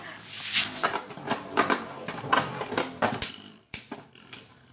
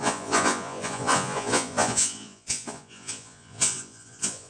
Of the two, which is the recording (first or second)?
first